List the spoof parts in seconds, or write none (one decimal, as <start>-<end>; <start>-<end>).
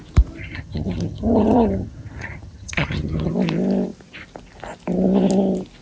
0.4-3.3